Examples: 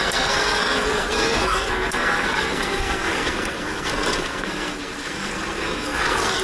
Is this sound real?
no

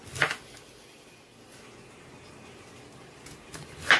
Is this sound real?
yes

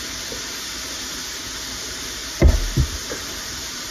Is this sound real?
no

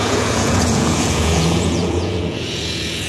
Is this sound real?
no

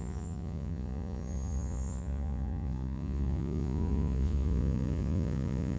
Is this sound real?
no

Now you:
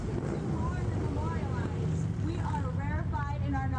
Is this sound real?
yes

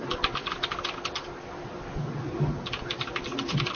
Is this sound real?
yes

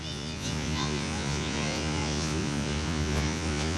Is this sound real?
no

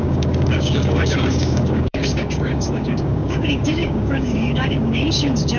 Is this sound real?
no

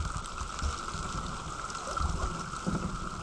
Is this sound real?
yes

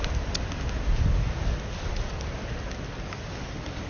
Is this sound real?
yes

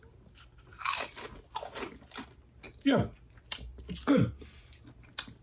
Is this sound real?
yes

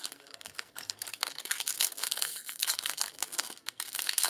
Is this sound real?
no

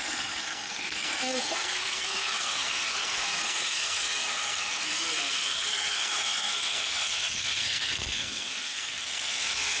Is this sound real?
no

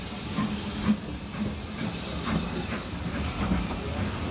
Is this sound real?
yes